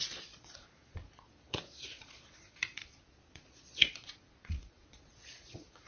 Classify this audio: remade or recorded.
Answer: remade